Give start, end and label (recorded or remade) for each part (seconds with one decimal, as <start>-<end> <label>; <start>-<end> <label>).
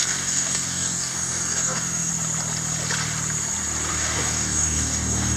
0.0-2.1 remade; 2.1-3.9 recorded; 3.9-5.4 remade